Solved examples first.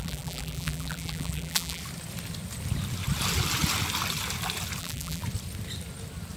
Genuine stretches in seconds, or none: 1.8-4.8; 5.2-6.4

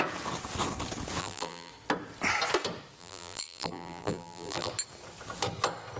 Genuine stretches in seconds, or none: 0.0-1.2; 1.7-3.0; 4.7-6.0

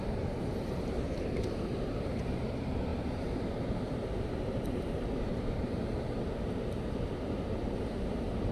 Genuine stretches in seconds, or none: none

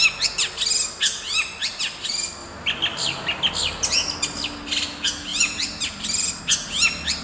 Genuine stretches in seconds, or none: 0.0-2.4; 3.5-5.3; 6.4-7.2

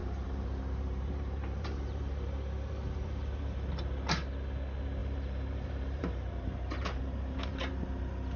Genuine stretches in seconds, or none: 3.7-5.0; 7.7-8.4

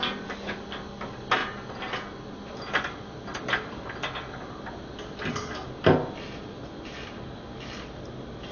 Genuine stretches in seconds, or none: 0.0-8.5

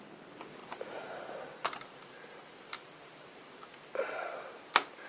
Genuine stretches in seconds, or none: 0.0-0.6; 3.7-5.1

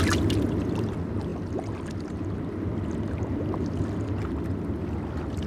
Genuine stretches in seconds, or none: 0.0-1.3; 2.2-5.5